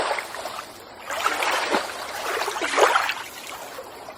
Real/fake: real